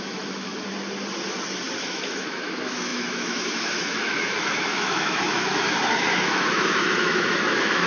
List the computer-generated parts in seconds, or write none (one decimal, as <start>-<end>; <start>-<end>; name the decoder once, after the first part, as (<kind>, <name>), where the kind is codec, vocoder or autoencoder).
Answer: 0.0-0.5 (autoencoder, DAC-VAE); 1.8-7.9